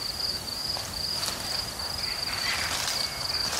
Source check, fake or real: real